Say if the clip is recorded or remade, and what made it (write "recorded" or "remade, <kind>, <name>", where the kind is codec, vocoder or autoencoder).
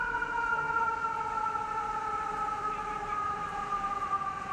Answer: remade, vocoder, BigVGAN v2